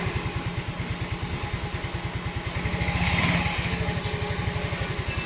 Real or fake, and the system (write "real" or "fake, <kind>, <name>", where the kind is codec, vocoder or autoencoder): real